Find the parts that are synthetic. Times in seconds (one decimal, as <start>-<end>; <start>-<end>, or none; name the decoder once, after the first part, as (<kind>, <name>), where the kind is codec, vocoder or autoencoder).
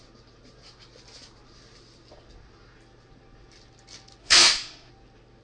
4.2-4.9 (autoencoder, DAC-VAE)